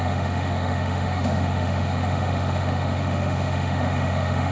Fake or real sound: fake